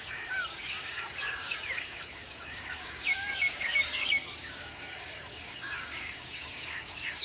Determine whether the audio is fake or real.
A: fake